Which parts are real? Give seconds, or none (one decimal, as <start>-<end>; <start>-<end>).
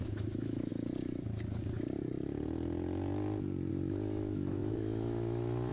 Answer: 0.7-3.7